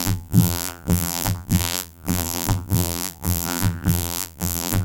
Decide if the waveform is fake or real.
fake